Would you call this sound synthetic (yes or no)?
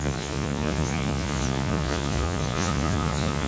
yes